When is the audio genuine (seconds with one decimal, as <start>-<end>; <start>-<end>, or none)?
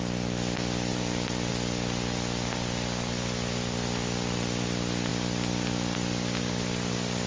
0.0-0.9; 1.5-7.3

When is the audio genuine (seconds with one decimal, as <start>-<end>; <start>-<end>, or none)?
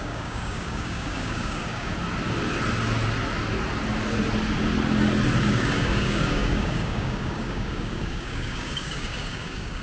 1.9-5.5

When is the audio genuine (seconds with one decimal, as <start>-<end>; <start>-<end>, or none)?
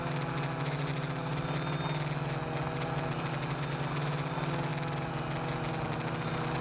0.0-6.6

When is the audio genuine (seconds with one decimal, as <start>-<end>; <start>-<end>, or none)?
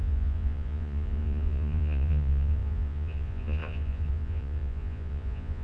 none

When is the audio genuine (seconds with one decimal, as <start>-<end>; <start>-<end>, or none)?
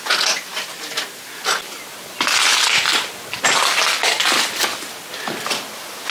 0.0-6.1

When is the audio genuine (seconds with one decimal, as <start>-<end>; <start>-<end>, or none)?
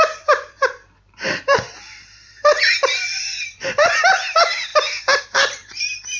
4.7-5.2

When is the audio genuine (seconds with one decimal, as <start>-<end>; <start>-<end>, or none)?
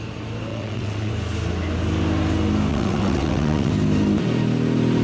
0.0-0.5; 1.1-2.7; 3.7-5.0